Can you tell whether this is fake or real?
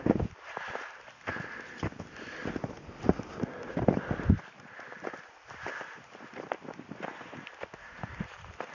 real